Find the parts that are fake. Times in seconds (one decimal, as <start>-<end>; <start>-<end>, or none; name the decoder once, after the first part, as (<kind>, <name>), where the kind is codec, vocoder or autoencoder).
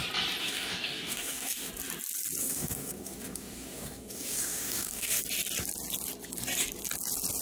0.4-1.7 (codec, DAC); 2.4-5.2